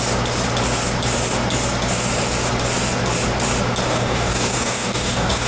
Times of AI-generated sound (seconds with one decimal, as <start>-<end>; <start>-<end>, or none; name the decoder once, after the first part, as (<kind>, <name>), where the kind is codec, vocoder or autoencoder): 3.9-5.5 (codec, DAC)